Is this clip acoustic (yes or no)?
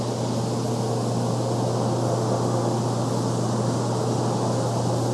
yes